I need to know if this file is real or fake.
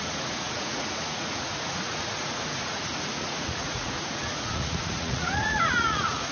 fake